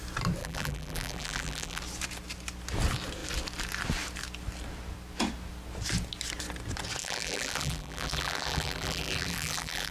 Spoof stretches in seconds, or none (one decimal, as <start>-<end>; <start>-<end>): 0.4-1.8; 7.0-9.9